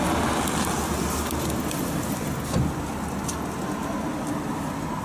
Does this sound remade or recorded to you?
recorded